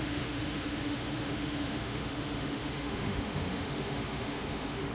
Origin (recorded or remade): remade